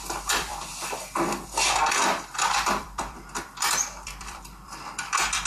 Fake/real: fake